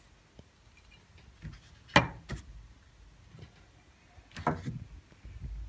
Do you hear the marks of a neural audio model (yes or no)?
no